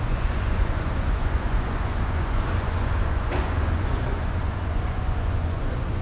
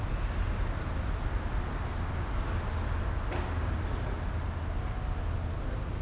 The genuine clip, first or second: second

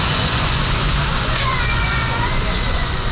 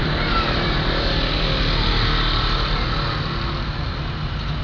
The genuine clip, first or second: second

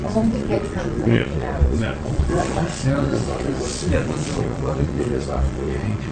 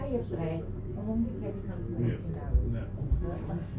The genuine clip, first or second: second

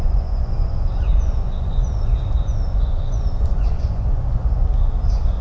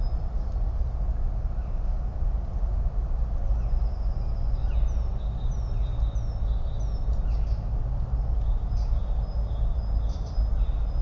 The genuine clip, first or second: second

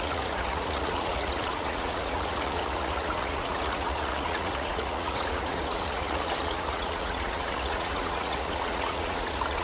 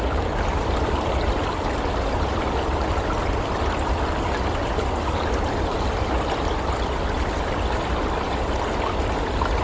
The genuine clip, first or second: second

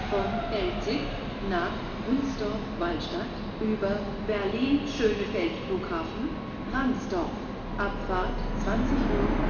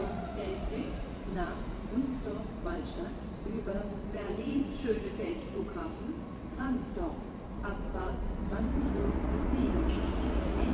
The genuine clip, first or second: first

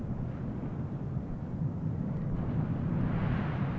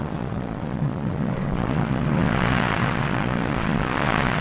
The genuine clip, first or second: first